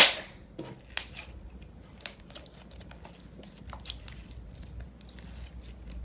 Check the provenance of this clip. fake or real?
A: real